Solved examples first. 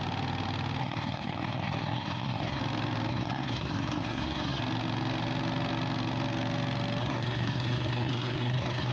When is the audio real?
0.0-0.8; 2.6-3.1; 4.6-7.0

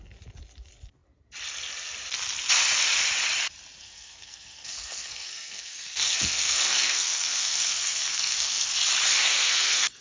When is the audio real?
0.0-3.8; 8.7-9.1